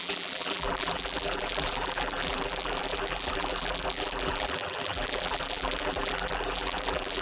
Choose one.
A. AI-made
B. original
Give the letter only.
A